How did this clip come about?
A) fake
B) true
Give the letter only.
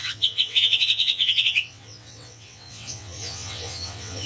A